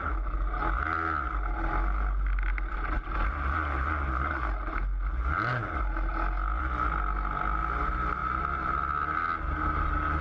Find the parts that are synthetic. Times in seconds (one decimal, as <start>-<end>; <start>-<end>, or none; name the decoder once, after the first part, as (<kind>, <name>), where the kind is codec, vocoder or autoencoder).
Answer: none

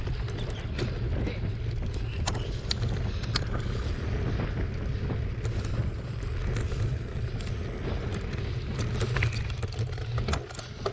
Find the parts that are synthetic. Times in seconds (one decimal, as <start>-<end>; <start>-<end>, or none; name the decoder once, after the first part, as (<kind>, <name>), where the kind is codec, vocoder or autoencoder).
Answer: 5.8-6.3 (vocoder, BigVGAN v2)

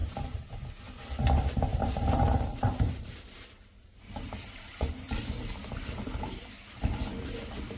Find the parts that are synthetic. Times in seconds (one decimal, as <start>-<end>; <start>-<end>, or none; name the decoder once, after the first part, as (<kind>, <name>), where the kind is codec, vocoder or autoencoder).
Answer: 0.0-0.6 (vocoder, BigVGAN v2); 1.7-6.4